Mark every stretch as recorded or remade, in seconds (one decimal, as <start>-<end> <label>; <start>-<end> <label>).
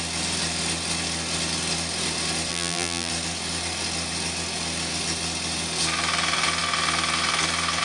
0.0-2.5 recorded; 2.5-3.1 remade; 3.1-7.8 recorded